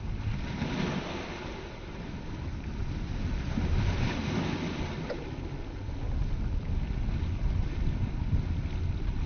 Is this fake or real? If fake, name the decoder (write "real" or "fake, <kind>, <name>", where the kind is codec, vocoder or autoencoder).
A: real